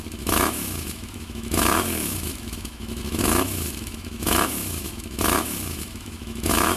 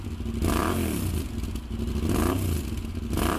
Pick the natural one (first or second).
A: second